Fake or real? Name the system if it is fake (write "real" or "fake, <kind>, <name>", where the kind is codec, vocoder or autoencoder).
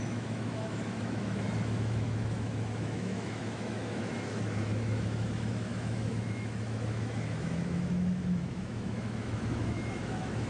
fake, autoencoder, DAC-VAE